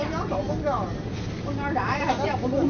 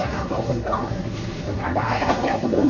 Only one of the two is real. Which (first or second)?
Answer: first